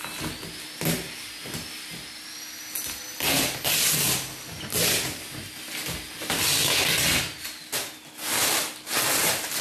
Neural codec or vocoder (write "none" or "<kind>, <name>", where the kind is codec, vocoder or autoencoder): none